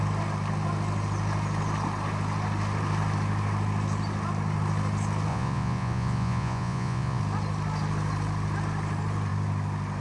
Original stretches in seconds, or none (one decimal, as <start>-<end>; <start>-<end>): 0.0-5.3; 7.2-10.0